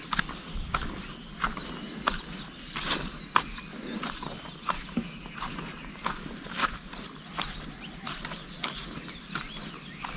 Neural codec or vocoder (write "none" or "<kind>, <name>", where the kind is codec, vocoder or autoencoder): none